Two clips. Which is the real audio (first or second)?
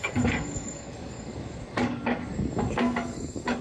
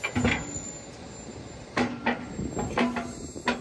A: second